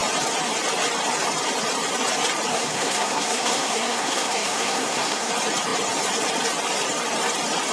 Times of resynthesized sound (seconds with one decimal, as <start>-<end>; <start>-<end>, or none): 2.5-5.3